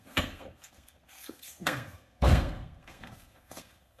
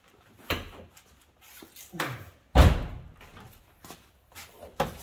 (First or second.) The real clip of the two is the second